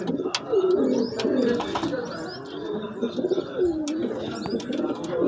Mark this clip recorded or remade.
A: recorded